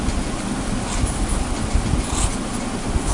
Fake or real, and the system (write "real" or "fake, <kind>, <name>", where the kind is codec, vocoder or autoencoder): real